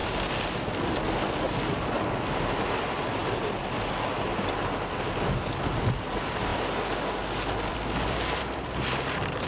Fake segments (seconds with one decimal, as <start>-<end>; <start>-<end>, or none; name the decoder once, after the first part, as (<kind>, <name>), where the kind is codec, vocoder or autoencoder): 0.7-3.2 (vocoder, BigVGAN v2); 5.8-6.5; 7.7-9.5